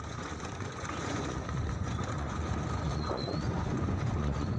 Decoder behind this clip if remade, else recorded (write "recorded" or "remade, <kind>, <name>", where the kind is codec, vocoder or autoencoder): remade, vocoder, Vocos